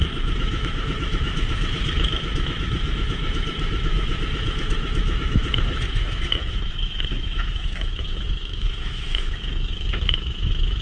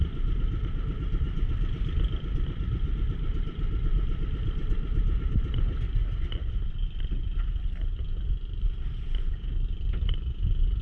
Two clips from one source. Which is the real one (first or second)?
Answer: second